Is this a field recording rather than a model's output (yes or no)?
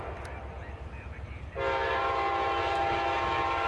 yes